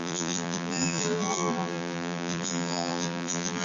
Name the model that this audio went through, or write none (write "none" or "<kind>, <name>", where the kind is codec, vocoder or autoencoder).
vocoder, BigVGAN v2